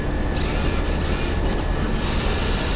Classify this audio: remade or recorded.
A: recorded